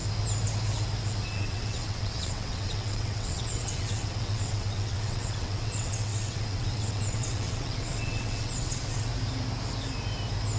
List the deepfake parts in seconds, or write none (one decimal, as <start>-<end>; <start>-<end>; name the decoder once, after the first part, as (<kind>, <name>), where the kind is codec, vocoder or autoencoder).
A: 1.3-9.1 (vocoder, WaveNeXt)